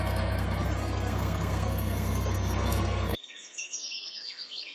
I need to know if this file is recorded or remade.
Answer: remade